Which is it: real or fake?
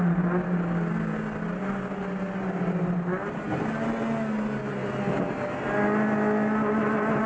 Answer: real